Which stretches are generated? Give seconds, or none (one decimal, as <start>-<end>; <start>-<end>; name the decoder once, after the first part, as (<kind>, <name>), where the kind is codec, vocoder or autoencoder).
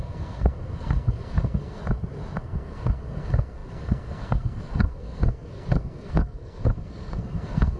0.0-1.8 (codec, SNAC); 2.4-7.8